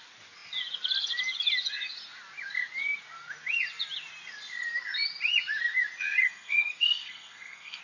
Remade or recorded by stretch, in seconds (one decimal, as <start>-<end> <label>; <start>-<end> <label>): 0.0-6.2 recorded; 6.2-7.8 remade